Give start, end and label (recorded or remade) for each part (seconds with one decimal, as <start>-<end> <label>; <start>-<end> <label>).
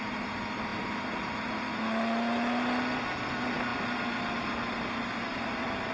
0.0-5.9 recorded